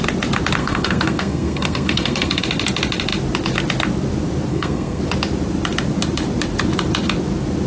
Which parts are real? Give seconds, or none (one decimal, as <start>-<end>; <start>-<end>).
0.0-0.6; 2.4-4.5; 5.0-7.7